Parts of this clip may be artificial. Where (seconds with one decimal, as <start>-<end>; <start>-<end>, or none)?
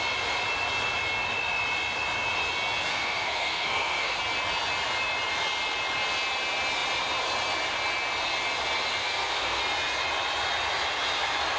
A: 2.9-4.2; 9.0-9.6